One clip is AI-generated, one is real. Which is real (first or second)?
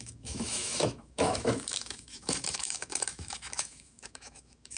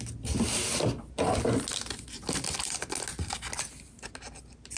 second